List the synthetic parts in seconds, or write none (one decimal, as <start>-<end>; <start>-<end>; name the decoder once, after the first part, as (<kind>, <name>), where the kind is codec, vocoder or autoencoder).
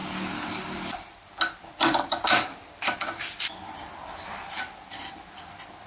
none